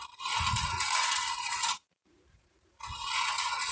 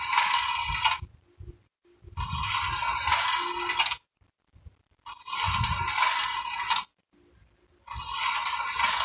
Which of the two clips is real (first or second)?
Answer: second